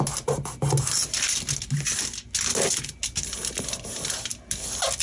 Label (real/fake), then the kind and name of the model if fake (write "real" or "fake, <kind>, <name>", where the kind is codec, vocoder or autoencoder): real